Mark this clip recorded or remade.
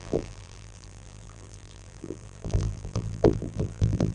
remade